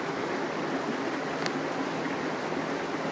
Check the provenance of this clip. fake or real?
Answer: real